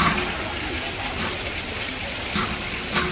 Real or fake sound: real